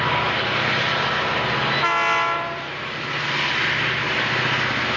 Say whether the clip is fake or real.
real